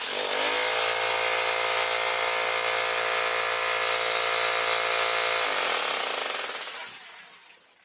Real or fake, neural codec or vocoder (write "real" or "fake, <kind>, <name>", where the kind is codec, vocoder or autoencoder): real